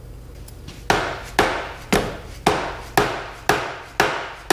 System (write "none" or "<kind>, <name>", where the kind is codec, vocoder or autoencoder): none